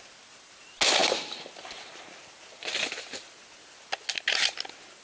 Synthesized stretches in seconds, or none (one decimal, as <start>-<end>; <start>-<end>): none